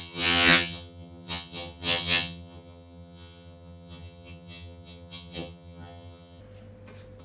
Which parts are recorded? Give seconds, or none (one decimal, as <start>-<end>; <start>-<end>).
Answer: 6.4-7.2